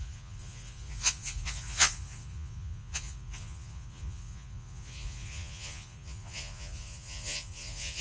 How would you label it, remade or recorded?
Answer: remade